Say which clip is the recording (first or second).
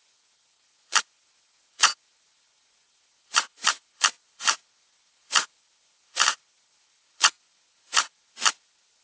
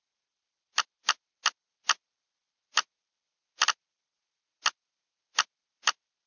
second